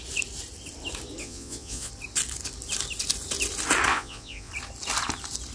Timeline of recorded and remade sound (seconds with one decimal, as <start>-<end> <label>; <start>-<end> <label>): 0.0-1.2 recorded; 1.2-1.9 remade; 1.9-3.9 recorded; 3.9-4.5 remade; 4.5-5.5 recorded